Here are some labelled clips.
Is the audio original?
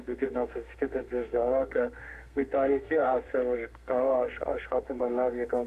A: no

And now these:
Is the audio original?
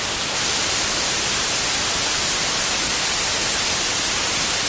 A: yes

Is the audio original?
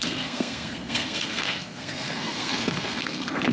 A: no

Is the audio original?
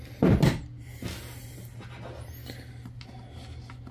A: yes